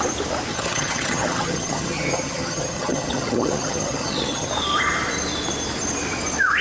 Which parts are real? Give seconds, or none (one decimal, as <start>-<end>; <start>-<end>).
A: 0.0-0.5; 4.5-6.6